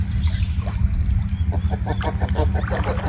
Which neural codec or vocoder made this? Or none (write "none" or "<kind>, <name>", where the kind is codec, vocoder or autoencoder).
none